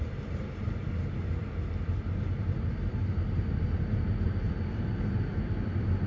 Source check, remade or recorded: recorded